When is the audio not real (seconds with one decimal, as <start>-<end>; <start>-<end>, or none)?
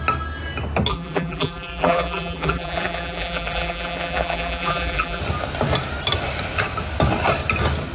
0.9-5.2